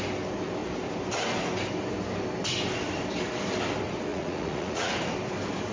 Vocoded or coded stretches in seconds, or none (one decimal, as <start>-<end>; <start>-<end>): 4.1-4.9